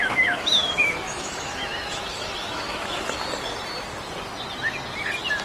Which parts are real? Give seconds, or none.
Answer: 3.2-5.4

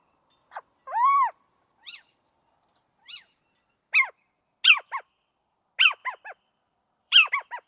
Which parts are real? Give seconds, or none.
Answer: 0.0-6.0; 7.3-7.7

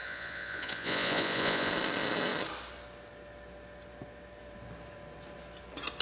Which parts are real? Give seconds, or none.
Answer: 1.7-6.0

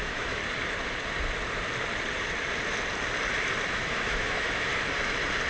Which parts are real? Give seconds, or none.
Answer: 0.4-3.7; 4.7-5.5

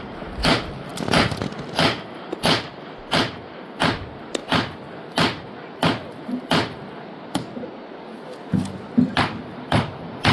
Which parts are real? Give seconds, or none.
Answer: 0.0-10.3

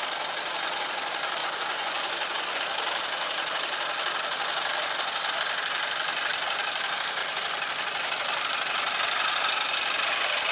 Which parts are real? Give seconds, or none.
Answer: 0.0-1.4; 2.6-10.5

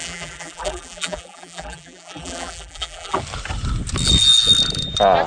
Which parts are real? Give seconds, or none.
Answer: 3.2-5.3

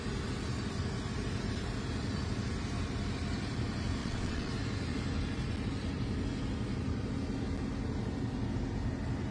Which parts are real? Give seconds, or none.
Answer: 0.0-4.0; 4.5-9.3